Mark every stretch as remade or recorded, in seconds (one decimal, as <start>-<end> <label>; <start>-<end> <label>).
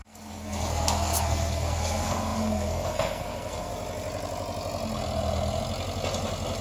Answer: 0.0-3.7 remade; 3.7-6.6 recorded